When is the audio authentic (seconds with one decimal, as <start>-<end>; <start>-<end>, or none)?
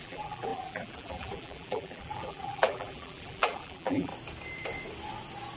4.1-5.6